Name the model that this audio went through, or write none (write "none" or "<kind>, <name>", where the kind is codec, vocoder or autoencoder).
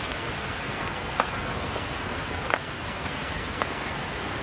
codec, SNAC